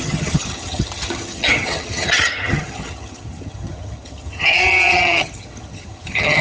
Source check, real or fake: fake